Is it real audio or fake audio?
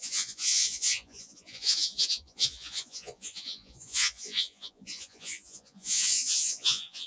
fake